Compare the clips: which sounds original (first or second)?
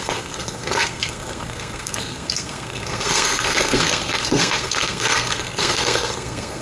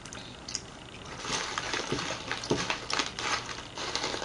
second